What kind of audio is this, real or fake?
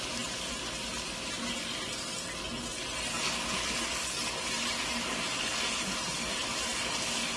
real